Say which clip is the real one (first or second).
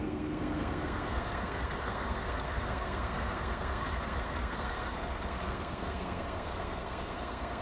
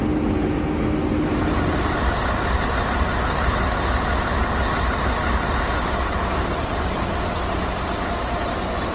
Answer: second